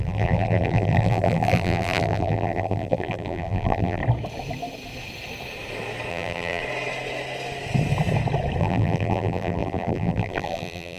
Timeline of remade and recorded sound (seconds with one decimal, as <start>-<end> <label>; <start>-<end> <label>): 0.0-4.0 remade; 4.0-6.1 recorded; 6.1-6.6 remade; 6.6-8.6 recorded; 8.6-11.0 remade